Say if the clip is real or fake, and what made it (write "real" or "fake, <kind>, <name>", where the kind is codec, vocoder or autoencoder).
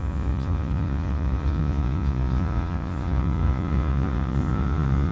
fake, vocoder, Vocos